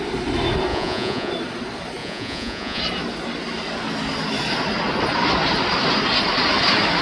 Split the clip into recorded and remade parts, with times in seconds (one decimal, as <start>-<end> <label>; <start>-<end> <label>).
0.0-0.7 recorded; 0.7-1.3 remade; 1.3-2.0 recorded; 2.0-2.8 remade; 2.8-7.0 recorded